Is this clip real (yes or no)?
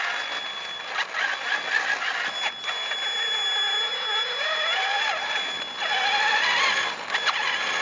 yes